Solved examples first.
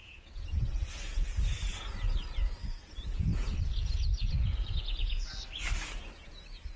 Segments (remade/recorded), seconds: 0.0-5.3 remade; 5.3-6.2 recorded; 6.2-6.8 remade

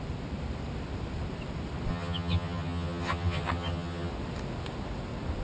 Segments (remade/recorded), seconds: 0.0-1.9 recorded; 1.9-4.1 remade; 4.1-5.4 recorded